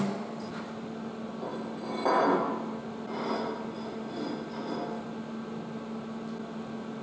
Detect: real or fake real